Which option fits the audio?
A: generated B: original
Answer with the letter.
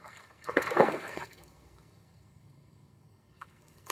A